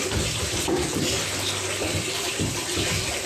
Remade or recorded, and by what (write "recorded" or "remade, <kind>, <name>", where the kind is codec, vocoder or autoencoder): recorded